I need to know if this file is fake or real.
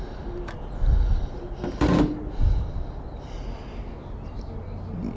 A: real